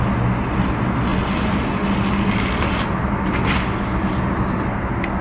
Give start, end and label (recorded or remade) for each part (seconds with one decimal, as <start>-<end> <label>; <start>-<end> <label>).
0.0-5.2 recorded